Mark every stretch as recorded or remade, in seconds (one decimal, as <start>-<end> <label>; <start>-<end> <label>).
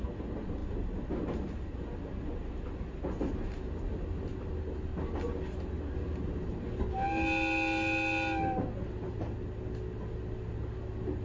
0.0-11.2 recorded